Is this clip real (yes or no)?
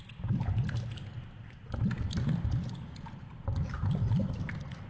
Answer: yes